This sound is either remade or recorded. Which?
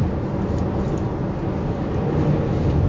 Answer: recorded